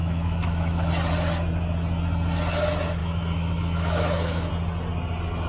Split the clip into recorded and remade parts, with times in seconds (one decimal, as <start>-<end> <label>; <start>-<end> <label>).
0.0-0.9 remade; 0.9-3.0 recorded; 3.0-4.5 remade; 4.5-5.5 recorded